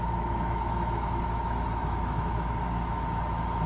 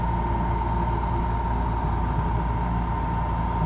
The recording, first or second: second